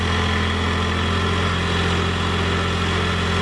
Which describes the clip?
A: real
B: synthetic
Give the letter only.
A